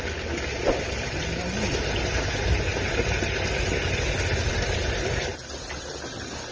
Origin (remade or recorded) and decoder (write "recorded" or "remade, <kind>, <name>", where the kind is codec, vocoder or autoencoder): recorded